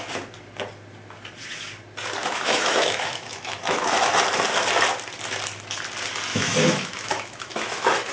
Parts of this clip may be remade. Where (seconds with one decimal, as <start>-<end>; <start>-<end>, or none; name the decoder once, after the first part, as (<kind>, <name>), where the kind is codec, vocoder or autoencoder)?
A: 2.2-4.1 (autoencoder, DAC-VAE); 6.3-8.1

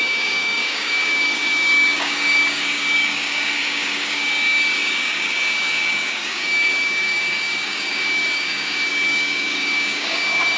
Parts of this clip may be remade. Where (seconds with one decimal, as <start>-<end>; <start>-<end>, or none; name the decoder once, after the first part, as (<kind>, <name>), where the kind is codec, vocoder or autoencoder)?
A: 0.0-10.6 (codec, DAC)

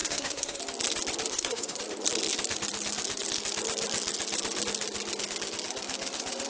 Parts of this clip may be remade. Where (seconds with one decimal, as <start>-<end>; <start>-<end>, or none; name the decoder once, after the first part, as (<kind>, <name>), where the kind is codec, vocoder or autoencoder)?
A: 0.0-0.6 (codec, SNAC); 1.3-1.8

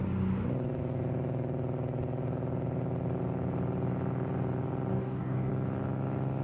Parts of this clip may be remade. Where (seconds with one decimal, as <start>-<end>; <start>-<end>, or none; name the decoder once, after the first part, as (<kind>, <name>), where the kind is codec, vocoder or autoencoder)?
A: 4.9-5.5 (codec, DAC)

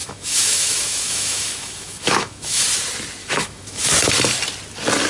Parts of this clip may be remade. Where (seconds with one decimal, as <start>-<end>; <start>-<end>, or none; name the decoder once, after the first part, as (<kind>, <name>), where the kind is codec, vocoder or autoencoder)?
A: 0.0-2.6 (autoencoder, DAC-VAE); 3.2-3.9

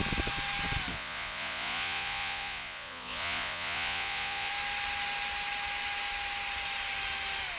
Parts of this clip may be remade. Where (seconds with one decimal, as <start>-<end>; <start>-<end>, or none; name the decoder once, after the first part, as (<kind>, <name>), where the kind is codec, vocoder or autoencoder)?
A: 0.9-4.5 (vocoder, Vocos)

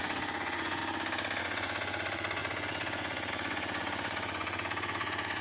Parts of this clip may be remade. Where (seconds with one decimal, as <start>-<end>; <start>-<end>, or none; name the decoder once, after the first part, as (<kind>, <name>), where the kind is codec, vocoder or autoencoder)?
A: 0.0-0.8 (vocoder, Vocos); 1.4-5.4